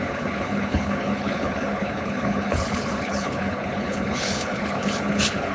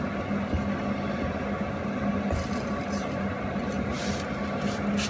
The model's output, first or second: first